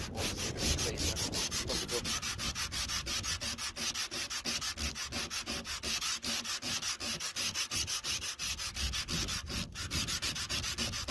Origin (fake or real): real